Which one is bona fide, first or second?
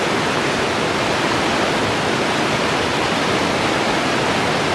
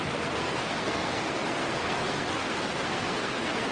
first